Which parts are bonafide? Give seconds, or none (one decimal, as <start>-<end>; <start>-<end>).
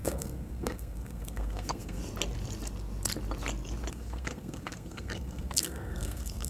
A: 2.0-3.9